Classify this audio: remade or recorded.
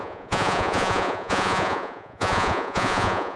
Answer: remade